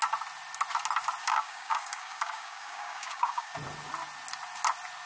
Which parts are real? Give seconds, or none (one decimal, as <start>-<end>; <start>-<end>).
0.0-1.2; 3.5-5.1